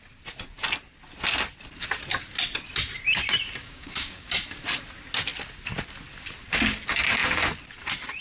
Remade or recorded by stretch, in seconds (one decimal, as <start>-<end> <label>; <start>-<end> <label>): 0.0-3.6 recorded; 3.6-4.3 remade; 4.3-8.2 recorded

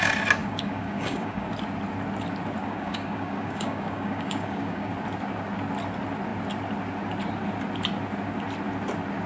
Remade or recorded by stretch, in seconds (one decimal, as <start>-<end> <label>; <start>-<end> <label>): 0.0-0.4 recorded; 0.4-1.5 remade; 1.5-2.6 recorded; 2.6-4.9 remade; 4.9-9.3 recorded

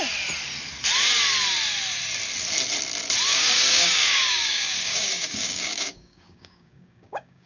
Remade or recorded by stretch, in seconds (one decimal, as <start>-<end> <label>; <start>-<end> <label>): 0.0-3.3 recorded; 3.3-7.5 remade

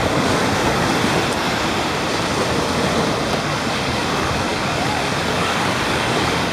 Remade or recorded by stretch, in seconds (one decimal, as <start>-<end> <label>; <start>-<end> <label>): 0.0-1.0 remade; 1.0-3.4 recorded; 3.4-6.5 remade